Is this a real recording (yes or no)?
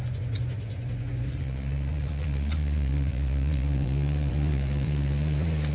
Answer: no